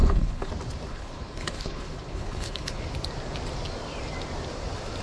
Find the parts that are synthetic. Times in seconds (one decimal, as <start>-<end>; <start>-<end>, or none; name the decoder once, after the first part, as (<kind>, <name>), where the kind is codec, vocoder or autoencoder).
0.0-0.5 (codec, HILCodec); 0.9-2.8